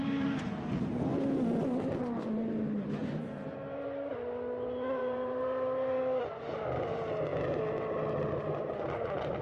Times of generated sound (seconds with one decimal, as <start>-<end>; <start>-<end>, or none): 0.0-0.6; 3.0-4.1; 5.0-6.2